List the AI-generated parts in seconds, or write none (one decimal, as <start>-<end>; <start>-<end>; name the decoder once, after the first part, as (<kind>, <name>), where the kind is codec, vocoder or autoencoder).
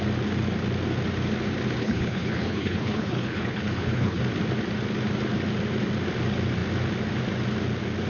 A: 1.8-4.2 (codec, HILCodec)